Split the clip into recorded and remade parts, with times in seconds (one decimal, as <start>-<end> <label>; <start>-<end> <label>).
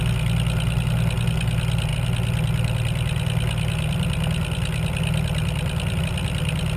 0.0-6.8 recorded